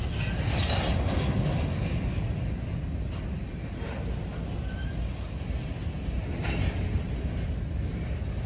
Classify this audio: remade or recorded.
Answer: recorded